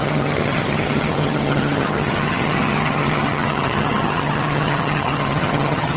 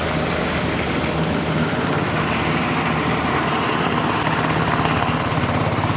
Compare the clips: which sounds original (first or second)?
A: second